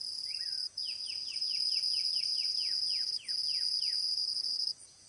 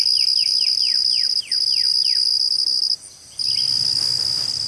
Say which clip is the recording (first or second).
second